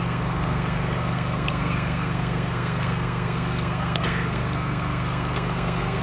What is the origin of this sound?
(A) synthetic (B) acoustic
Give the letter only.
A